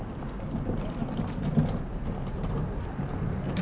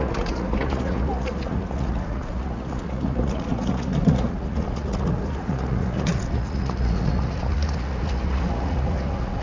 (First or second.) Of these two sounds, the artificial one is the second